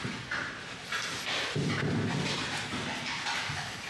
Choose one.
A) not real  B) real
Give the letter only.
B